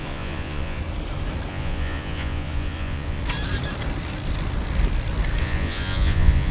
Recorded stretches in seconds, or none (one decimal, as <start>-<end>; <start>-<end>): 0.8-1.5; 3.2-5.4